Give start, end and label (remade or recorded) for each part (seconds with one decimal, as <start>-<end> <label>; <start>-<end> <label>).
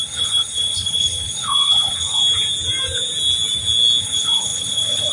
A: 0.0-2.2 remade; 2.2-4.0 recorded; 4.0-5.1 remade